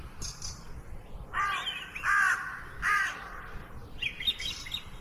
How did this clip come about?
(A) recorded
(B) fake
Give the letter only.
A